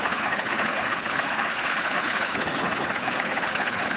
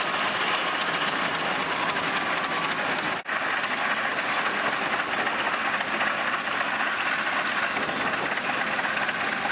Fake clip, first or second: first